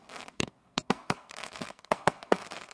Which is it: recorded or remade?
remade